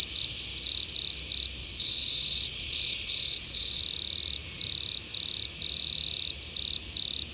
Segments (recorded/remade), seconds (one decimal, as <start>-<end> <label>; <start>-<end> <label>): 0.0-1.6 recorded; 1.6-3.8 remade; 3.8-7.3 recorded